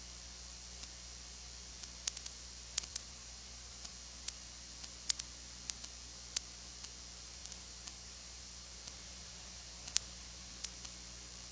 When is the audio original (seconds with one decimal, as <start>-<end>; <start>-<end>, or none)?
0.0-2.9; 3.9-7.4; 10.5-11.5